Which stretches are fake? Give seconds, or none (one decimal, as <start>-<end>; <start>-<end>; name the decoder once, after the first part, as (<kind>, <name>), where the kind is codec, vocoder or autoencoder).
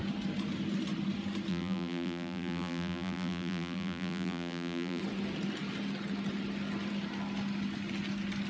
1.5-5.0 (vocoder, BigVGAN v2)